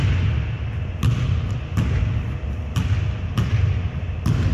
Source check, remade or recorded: recorded